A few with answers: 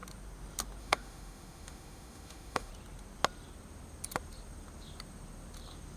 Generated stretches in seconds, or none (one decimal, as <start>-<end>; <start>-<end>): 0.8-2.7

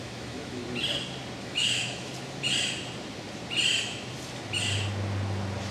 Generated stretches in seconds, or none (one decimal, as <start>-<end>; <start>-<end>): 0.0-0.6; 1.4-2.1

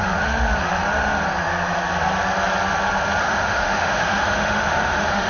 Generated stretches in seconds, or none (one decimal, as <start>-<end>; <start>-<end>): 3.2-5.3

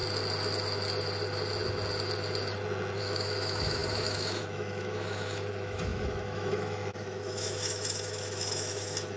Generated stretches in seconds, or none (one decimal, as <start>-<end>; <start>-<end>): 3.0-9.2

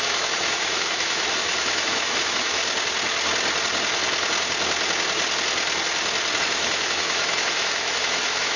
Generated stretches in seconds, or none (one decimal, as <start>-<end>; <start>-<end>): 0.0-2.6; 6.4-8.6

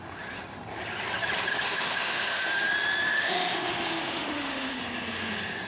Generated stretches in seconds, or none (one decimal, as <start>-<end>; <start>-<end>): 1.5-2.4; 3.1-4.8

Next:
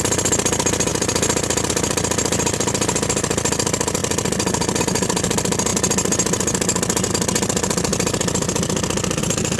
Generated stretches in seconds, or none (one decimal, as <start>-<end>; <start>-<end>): none